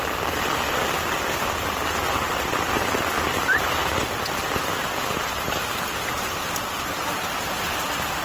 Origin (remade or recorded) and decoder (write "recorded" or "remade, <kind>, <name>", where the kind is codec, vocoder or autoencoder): recorded